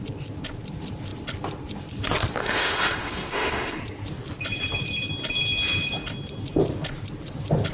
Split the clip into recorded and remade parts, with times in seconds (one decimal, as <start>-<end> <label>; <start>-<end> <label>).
0.0-2.4 recorded; 2.4-3.8 remade; 3.8-7.7 recorded